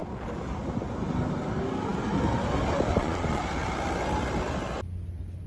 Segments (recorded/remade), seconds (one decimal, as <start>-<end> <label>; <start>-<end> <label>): 0.0-2.9 recorded; 2.9-3.4 remade; 3.4-5.5 recorded